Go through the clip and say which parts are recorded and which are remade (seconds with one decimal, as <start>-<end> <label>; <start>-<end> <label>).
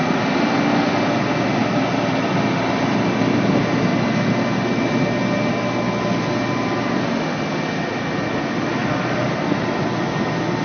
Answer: 0.0-10.6 recorded